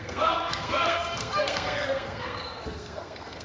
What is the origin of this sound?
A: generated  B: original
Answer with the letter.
A